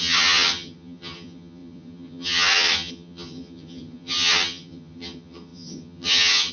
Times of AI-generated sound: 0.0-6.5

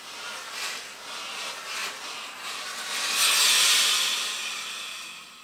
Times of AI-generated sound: none